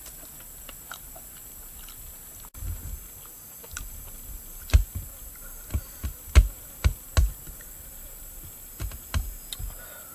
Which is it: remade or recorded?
recorded